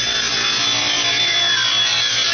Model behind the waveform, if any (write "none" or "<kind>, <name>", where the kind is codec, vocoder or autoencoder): none